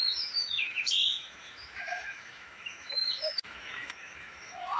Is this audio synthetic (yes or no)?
yes